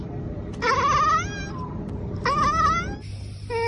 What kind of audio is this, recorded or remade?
recorded